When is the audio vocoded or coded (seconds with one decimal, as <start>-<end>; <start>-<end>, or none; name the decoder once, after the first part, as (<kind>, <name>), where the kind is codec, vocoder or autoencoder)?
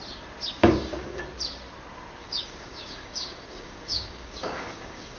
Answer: 0.6-1.2 (codec, DAC); 2.2-5.2